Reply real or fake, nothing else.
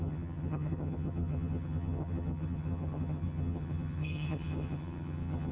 fake